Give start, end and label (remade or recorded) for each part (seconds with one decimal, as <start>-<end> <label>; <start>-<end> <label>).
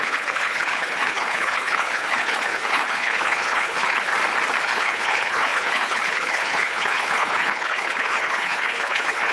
0.0-4.1 remade; 4.1-4.6 recorded; 4.6-9.3 remade